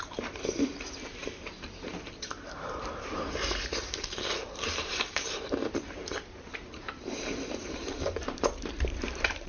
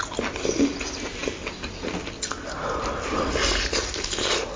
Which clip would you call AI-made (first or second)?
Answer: first